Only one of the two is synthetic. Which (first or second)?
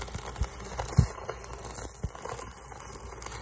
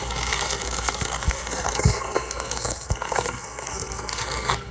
second